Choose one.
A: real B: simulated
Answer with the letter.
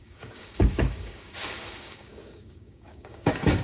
B